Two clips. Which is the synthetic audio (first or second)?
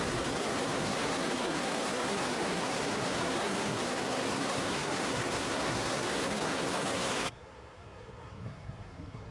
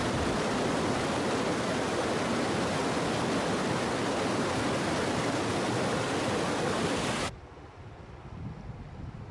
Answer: first